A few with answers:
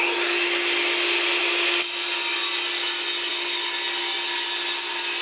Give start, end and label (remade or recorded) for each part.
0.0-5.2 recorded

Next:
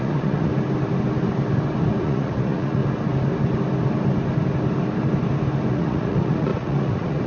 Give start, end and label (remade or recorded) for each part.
0.0-0.5 remade; 0.5-2.0 recorded; 2.0-2.8 remade; 2.8-5.7 recorded; 5.7-7.3 remade

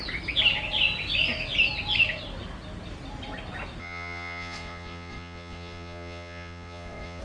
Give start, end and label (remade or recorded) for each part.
0.0-3.8 recorded; 3.8-7.2 remade

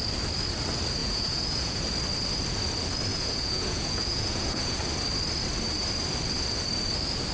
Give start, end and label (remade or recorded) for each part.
0.0-1.0 recorded; 1.0-1.8 remade; 1.8-3.1 recorded; 3.1-4.8 remade; 4.8-7.3 recorded

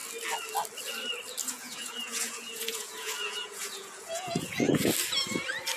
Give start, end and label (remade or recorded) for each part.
0.0-1.4 recorded; 1.4-4.9 remade; 4.9-5.8 recorded

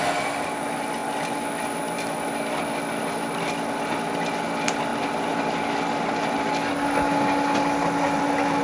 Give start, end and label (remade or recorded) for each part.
0.0-8.6 recorded

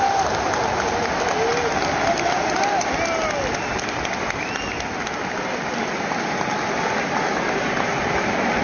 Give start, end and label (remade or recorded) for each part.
0.0-8.6 recorded